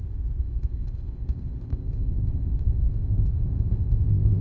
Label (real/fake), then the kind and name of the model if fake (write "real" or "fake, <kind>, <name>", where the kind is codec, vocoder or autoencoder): fake, codec, ZipCodec